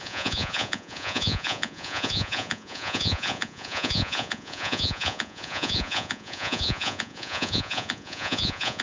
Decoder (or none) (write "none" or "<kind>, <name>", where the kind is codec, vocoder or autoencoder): vocoder, Vocos